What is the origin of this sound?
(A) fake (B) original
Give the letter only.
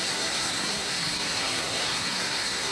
A